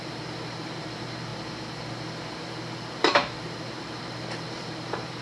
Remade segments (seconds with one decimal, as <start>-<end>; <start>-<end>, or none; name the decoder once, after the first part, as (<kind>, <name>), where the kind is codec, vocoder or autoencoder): 0.0-1.3 (vocoder, BigVGAN v2); 3.0-5.2